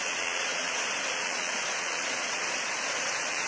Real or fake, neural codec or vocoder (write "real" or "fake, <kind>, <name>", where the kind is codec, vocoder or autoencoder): fake, vocoder, Vocos